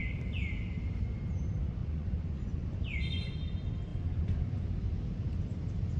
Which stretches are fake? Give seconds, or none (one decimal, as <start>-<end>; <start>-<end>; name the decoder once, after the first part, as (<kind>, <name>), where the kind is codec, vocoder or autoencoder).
1.8-3.3 (vocoder, Vocos); 3.9-4.7